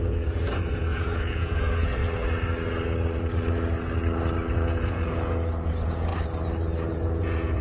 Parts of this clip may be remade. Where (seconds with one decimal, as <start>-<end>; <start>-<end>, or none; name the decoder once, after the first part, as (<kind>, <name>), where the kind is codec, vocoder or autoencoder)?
0.0-2.0 (vocoder, Vocos); 4.5-6.1; 6.9-7.6